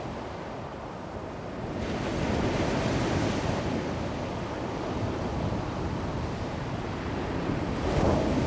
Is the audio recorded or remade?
recorded